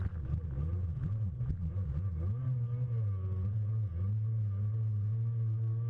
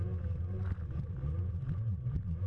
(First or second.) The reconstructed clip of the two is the second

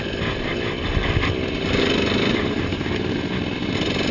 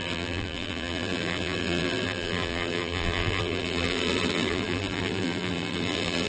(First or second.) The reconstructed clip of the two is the second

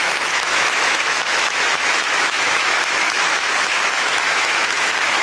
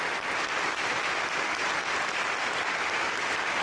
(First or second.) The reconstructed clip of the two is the first